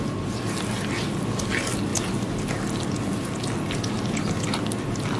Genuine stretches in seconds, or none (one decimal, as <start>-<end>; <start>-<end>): 0.0-5.2